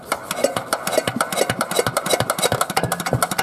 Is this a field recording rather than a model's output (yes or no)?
yes